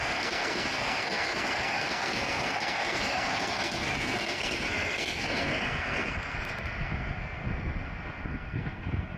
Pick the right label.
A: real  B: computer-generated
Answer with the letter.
B